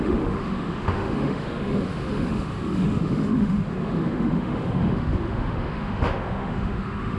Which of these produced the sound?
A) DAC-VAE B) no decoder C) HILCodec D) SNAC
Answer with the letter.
A